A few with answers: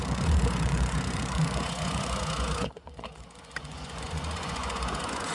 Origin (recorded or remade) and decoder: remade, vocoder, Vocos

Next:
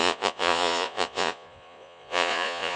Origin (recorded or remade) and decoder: remade, vocoder, Vocos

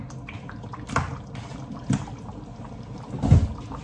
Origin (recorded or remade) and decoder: recorded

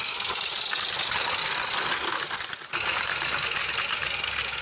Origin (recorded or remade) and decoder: recorded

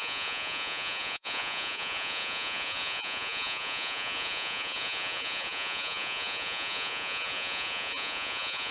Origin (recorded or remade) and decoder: remade, vocoder, Vocos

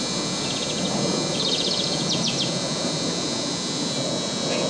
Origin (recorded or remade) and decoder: remade, vocoder, Vocos